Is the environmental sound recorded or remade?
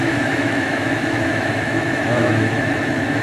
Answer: remade